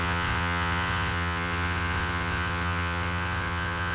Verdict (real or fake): fake